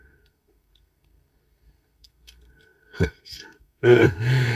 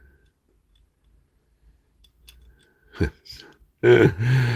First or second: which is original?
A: second